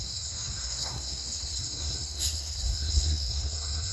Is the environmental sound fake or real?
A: fake